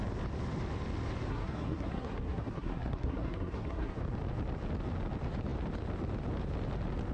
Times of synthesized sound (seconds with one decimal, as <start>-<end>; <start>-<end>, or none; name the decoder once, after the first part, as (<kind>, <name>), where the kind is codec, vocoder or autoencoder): 1.3-4.0 (codec, SNAC)